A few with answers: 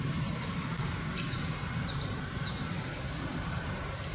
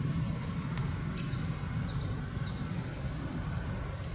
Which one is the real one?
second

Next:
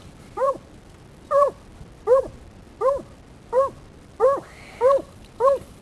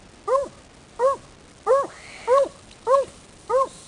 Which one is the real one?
second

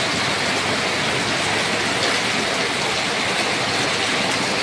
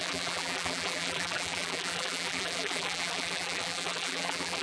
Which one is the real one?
first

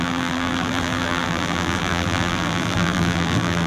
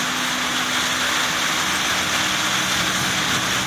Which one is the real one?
second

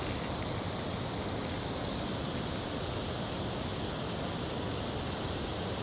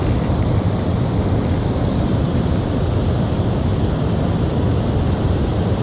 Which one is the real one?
first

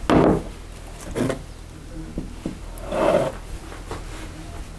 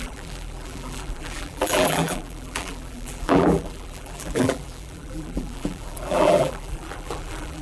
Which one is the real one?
first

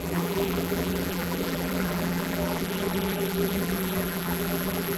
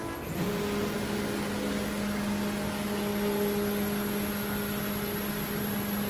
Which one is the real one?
second